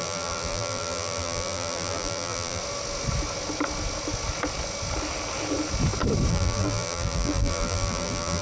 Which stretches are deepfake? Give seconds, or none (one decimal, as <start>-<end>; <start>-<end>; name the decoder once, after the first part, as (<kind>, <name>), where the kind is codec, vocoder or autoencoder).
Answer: 0.0-2.6 (vocoder, BigVGAN v2); 6.3-8.4